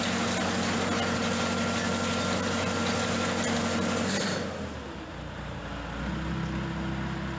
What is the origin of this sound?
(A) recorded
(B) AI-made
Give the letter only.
A